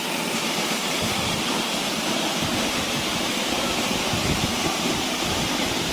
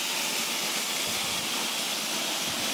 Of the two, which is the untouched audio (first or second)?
second